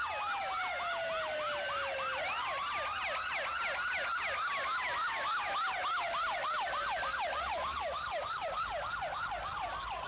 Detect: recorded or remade recorded